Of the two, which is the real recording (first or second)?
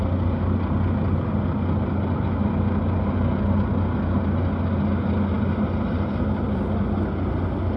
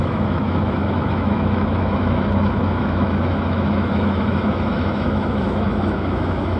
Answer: first